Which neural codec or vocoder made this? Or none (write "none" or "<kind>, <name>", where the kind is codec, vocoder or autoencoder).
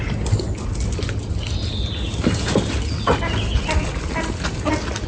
none